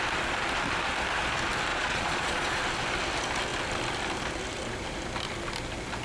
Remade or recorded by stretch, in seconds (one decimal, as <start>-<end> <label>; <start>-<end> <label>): 0.0-1.7 recorded; 1.7-2.6 remade; 2.6-6.0 recorded